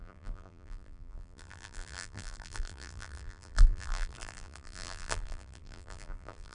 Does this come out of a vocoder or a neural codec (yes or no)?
yes